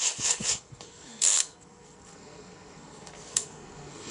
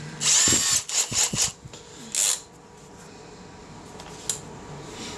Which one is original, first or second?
second